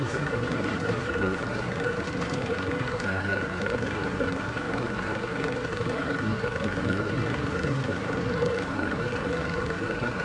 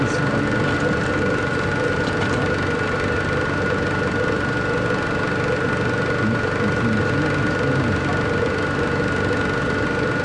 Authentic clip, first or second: second